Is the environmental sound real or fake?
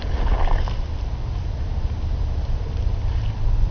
fake